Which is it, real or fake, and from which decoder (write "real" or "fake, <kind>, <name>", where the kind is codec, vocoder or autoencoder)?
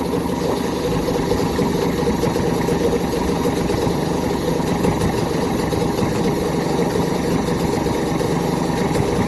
real